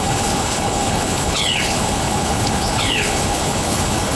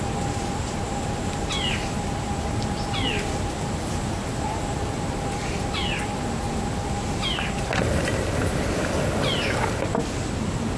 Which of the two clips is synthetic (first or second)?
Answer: first